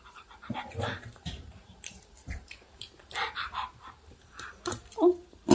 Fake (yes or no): yes